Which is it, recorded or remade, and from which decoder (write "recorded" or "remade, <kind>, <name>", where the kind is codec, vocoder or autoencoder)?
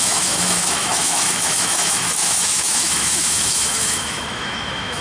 remade, autoencoder, DAC-VAE